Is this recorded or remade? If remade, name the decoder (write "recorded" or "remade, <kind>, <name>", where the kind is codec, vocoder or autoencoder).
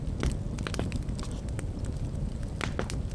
recorded